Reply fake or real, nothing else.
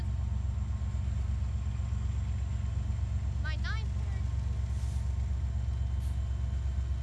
real